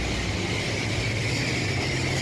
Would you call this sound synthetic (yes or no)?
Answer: no